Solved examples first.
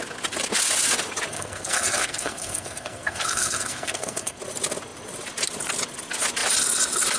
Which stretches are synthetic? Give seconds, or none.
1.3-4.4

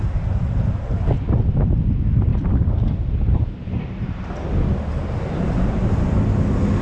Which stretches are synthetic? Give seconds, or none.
none

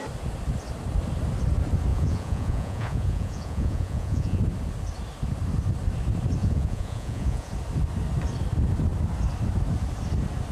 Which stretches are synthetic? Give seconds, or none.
1.9-4.4; 6.4-7.5

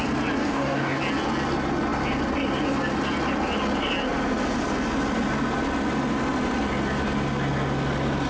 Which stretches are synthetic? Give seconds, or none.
0.4-1.0